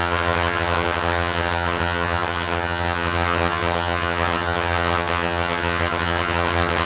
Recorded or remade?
remade